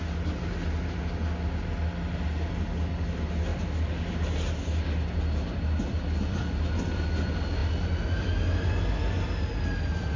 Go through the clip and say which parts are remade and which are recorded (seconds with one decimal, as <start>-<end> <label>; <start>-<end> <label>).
0.0-10.2 recorded

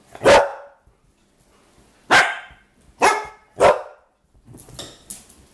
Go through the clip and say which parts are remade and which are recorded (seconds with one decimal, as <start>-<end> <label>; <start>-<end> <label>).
0.0-5.5 recorded

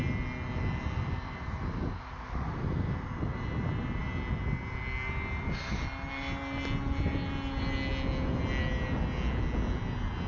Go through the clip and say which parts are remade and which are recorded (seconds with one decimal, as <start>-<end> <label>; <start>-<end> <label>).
0.0-10.3 recorded

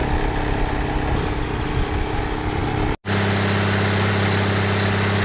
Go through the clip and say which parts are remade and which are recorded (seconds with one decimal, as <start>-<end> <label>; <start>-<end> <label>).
0.0-5.2 recorded

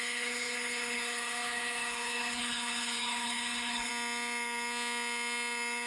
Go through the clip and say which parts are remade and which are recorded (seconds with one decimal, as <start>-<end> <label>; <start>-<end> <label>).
0.0-3.9 remade; 3.9-5.9 recorded